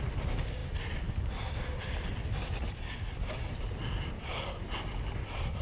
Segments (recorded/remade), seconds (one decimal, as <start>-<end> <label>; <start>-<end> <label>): 0.0-5.6 recorded